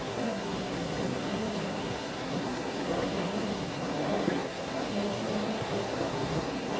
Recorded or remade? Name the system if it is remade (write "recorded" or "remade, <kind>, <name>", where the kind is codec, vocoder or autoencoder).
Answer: remade, codec, SNAC